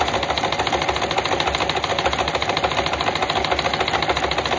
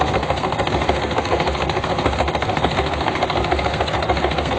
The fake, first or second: second